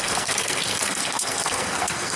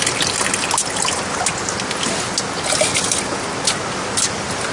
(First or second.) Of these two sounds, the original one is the second